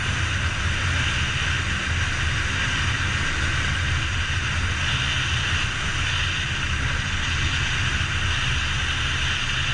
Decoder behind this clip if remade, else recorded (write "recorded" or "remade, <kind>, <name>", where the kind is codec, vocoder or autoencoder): recorded